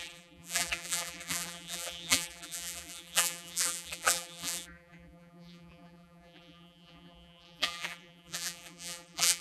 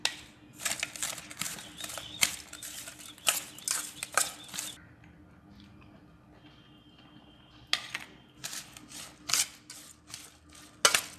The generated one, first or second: first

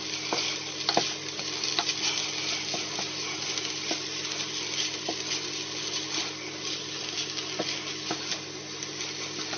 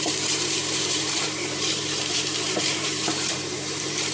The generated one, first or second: second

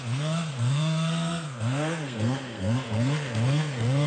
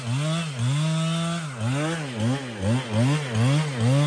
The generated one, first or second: first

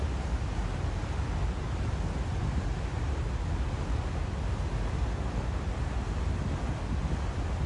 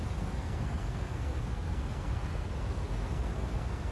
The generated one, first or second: second